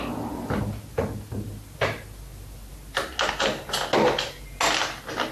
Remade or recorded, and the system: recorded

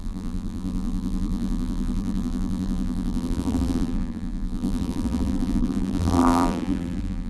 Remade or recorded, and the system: remade, vocoder, BigVGAN v2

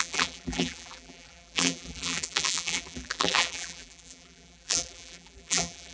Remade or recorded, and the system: remade, vocoder, BigVGAN v2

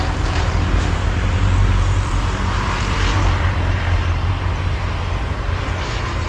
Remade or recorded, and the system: remade, vocoder, BigVGAN v2